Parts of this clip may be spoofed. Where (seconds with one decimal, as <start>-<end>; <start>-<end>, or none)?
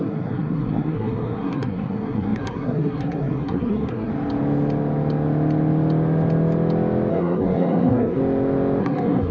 0.0-4.1; 7.1-8.2; 8.8-9.3